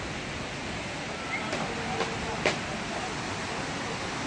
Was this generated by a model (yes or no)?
no